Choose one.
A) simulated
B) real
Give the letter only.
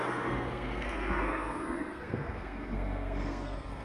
A